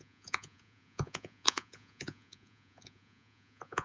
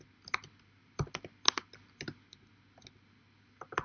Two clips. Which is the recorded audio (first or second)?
second